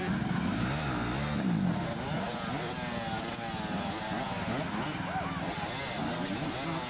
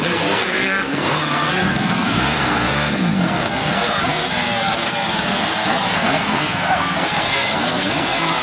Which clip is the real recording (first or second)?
first